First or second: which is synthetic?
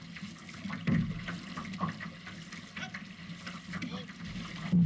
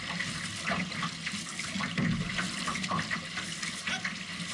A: second